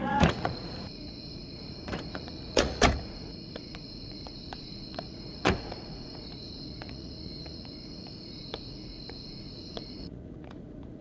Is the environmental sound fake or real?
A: fake